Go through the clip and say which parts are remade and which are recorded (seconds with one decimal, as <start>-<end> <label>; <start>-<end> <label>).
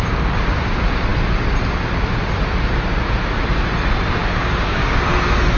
0.0-4.2 recorded; 4.2-5.0 remade; 5.0-5.6 recorded